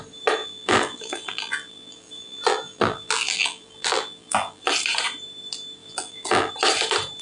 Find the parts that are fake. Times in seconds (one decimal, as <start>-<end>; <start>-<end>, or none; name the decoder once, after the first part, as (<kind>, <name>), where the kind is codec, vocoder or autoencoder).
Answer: 0.4-4.7 (vocoder, BigVGAN v2); 5.8-6.5